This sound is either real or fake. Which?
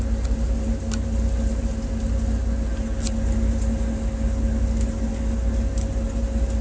real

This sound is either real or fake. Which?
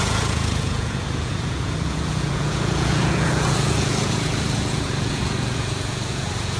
fake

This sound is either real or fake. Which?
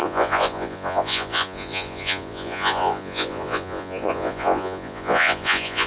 fake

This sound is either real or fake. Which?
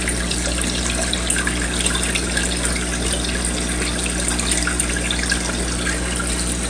real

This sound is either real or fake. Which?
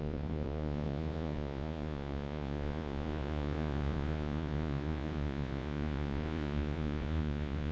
fake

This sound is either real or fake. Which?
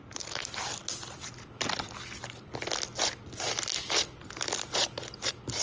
real